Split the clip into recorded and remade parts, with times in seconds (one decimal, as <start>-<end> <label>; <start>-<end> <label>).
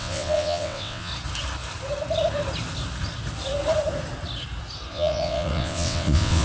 0.0-1.1 remade; 1.1-4.9 recorded; 4.9-6.4 remade